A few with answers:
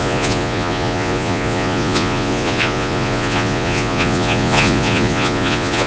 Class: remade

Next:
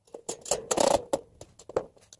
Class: recorded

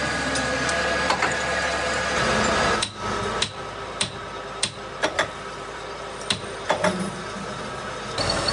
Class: recorded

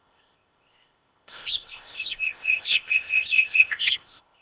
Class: remade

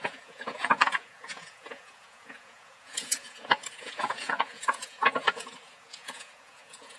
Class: remade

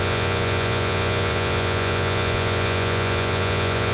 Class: remade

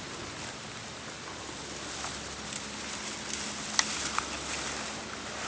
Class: recorded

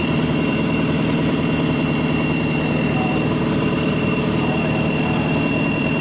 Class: remade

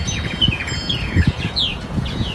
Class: remade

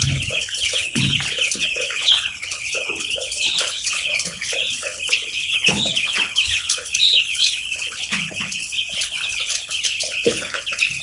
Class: remade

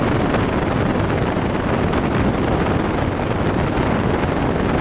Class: recorded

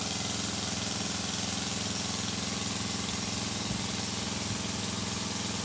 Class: recorded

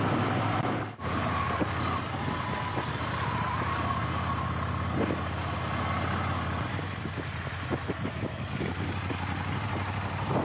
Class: recorded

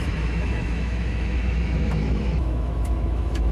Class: remade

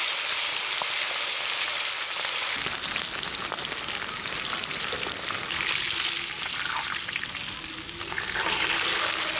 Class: recorded